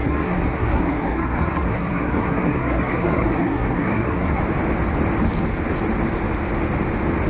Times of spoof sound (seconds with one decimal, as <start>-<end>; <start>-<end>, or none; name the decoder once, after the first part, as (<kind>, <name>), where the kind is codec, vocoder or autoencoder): 0.0-4.4 (codec, SNAC)

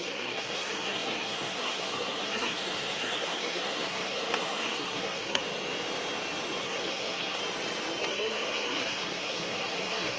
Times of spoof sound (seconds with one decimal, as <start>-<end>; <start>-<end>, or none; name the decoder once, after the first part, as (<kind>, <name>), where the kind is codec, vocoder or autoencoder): 0.0-5.4 (codec, SNAC); 6.6-7.4; 8.1-10.2

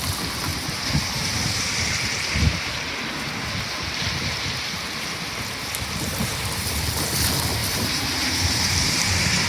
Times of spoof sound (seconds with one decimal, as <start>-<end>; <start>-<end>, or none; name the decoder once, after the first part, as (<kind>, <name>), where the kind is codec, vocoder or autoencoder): 0.5-3.0 (vocoder, BigVGAN v2); 4.2-6.7; 7.6-9.5

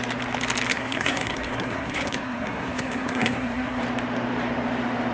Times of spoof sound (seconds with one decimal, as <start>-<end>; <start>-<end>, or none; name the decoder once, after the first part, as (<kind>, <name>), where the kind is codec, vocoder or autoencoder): 0.7-3.8 (codec, SNAC)

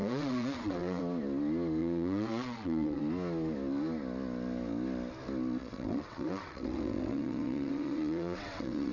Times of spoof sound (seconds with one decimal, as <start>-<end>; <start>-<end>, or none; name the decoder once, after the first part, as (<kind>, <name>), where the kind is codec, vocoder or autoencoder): 0.0-1.0 (vocoder, WaveNeXt); 1.8-3.0; 5.6-8.9